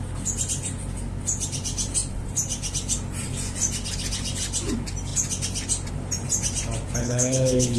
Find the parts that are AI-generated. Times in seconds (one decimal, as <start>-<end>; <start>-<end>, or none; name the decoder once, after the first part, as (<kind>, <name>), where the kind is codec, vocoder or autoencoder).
7.0-7.8 (codec, HILCodec)